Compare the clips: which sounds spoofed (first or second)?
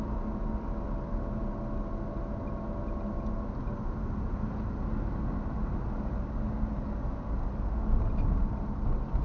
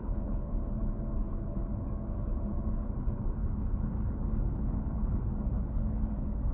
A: second